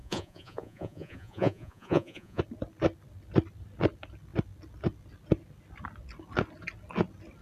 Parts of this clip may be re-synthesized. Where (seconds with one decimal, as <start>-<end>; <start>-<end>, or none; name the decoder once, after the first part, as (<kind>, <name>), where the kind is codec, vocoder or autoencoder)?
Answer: 0.0-2.4 (vocoder, Vocos)